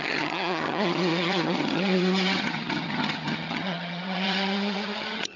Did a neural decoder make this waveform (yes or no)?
yes